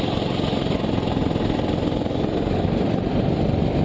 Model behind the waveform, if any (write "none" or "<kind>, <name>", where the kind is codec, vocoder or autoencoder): none